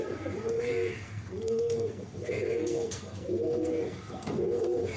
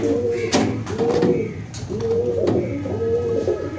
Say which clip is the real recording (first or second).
second